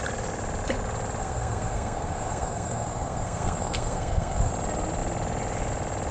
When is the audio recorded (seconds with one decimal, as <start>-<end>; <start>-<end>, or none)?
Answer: 0.0-1.2; 4.5-6.1